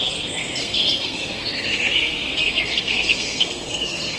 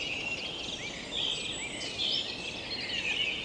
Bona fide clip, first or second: second